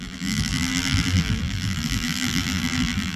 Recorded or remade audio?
remade